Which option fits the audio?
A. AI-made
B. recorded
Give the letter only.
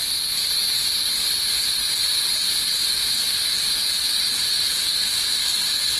B